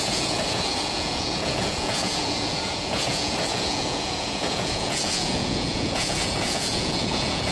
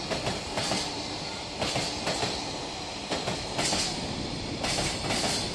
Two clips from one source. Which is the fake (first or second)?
first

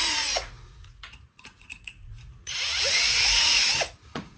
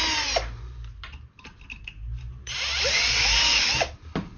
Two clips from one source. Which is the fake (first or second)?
first